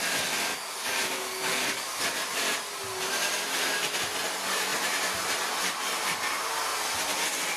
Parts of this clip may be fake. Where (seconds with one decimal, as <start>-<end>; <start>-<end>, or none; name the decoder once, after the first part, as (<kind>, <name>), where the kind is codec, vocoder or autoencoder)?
0.5-2.0 (codec, DAC)

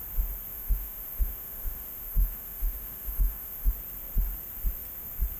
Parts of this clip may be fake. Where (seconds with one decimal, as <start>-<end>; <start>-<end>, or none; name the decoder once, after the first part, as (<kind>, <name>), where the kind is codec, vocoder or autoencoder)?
0.5-3.7 (autoencoder, DAC-VAE)

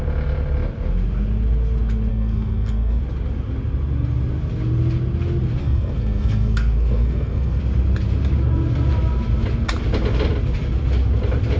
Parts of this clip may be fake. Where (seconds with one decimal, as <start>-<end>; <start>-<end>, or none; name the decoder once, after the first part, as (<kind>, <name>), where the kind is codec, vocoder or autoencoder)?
2.1-3.0 (codec, SNAC); 5.6-7.6

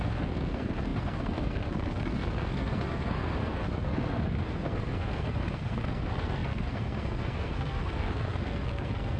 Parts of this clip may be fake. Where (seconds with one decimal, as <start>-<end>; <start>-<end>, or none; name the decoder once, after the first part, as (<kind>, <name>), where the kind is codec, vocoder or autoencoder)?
0.0-9.2 (codec, SNAC)

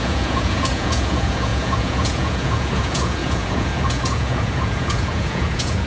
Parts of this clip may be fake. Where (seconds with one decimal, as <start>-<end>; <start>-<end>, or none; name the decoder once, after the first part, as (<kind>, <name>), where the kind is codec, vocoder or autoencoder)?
0.0-5.9 (vocoder, Vocos)

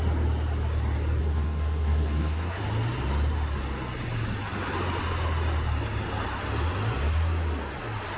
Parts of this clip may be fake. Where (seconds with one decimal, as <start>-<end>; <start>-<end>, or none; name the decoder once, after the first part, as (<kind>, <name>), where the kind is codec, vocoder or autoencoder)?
1.2-2.6 (codec, SNAC)